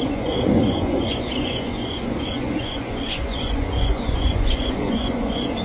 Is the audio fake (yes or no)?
yes